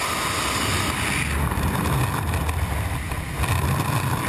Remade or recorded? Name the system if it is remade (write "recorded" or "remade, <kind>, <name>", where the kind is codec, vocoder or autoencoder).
recorded